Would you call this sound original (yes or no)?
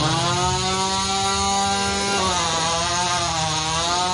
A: yes